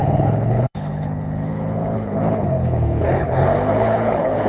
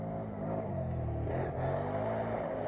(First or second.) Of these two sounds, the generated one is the first